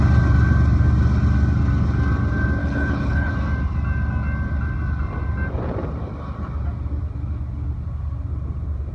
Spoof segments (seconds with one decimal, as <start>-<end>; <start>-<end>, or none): 2.6-3.3